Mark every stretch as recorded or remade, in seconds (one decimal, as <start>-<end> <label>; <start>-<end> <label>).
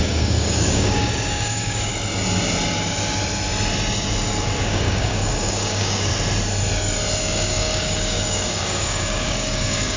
0.0-1.9 remade; 1.9-4.7 recorded; 4.7-6.1 remade; 6.1-7.2 recorded; 7.2-10.0 remade